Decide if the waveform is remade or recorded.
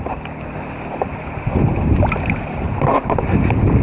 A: recorded